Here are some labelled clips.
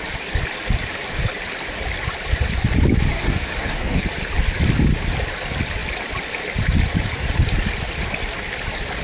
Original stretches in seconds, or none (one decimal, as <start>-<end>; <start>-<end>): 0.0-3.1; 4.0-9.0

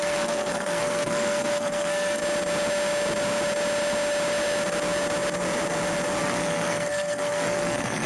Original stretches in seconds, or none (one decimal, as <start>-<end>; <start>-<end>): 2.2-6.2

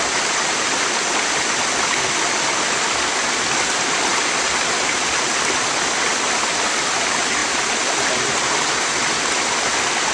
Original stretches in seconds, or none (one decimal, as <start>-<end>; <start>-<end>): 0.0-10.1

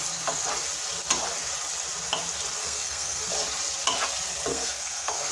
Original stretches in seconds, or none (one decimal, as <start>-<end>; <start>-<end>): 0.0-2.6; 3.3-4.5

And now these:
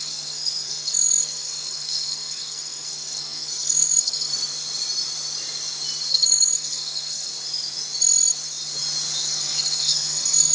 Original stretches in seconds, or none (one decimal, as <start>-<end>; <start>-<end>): 4.3-6.1; 7.3-9.2